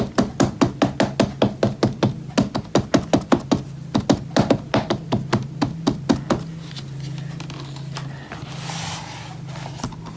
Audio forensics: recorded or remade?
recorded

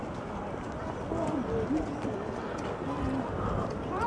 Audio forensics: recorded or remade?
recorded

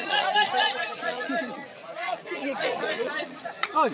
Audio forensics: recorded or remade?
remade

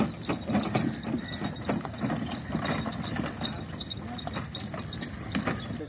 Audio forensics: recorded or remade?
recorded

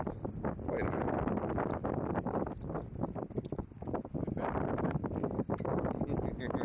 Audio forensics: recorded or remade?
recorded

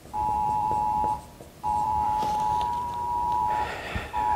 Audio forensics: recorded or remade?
remade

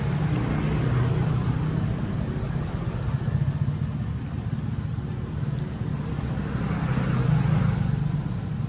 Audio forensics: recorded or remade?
recorded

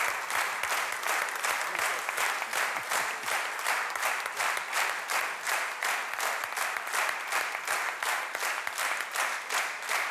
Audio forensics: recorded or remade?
remade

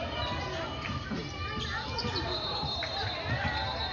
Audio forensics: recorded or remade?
recorded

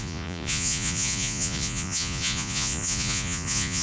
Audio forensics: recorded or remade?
remade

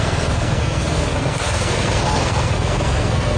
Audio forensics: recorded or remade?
remade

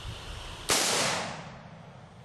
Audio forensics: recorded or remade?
recorded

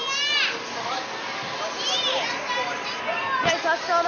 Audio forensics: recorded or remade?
recorded